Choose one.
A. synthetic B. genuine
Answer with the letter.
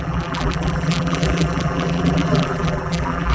A